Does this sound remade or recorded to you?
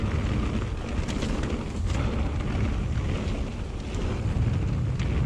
recorded